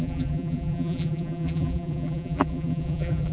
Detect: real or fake fake